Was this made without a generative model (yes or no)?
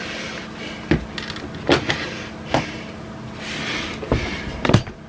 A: yes